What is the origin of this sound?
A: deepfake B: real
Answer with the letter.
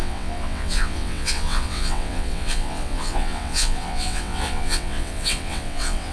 A